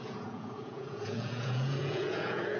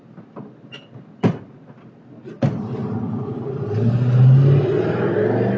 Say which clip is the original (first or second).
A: second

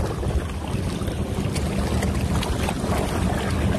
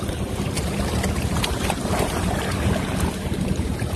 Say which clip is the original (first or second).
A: first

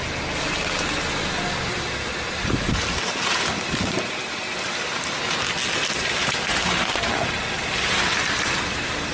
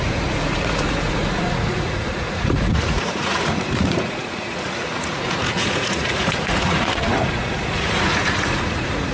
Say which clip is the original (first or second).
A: first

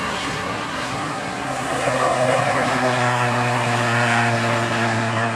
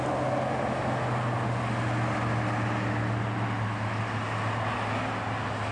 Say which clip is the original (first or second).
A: second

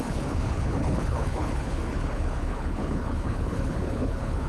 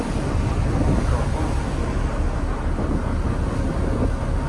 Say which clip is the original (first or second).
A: second